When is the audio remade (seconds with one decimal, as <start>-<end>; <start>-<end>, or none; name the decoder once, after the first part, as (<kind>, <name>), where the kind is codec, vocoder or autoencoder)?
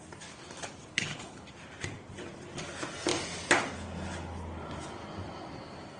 0.9-1.5 (codec, HILCodec)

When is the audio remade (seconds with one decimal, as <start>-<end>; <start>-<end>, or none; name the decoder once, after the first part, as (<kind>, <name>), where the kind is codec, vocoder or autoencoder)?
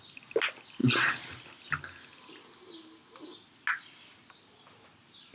none